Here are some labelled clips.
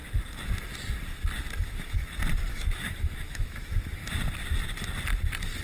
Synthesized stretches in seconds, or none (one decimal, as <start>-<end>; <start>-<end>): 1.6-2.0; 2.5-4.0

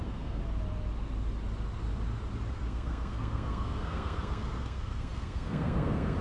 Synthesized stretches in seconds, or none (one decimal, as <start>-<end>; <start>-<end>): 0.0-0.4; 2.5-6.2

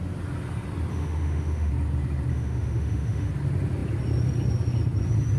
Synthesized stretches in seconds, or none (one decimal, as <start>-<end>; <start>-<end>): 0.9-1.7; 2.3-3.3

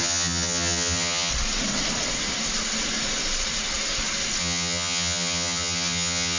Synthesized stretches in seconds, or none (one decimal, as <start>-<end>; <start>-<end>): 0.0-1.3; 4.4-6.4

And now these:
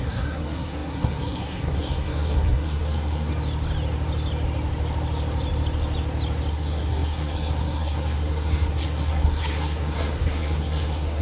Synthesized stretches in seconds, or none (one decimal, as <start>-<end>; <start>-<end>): 0.0-3.3; 6.5-11.2

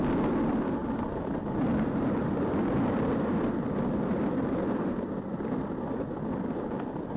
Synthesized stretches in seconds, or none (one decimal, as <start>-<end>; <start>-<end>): 0.8-5.1

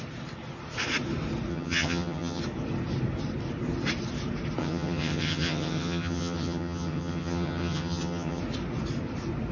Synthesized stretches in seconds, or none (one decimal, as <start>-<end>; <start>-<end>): 1.5-2.4; 4.6-8.4

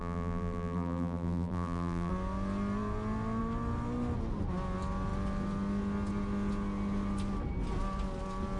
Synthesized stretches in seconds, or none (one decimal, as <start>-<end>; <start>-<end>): 0.0-2.1